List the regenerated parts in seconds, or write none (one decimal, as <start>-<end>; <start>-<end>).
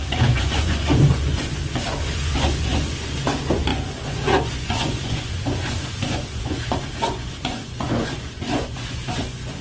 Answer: 0.0-9.6